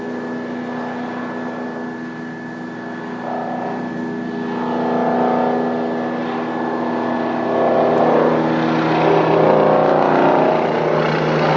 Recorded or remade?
recorded